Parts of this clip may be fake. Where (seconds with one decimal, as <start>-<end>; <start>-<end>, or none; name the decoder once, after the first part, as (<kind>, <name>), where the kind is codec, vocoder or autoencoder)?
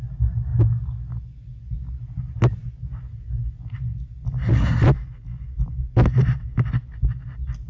none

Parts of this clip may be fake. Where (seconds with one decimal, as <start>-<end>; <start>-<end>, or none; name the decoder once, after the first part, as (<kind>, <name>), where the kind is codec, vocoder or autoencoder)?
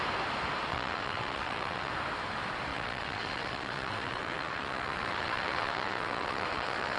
0.7-1.9 (vocoder, WaveNeXt); 2.7-7.0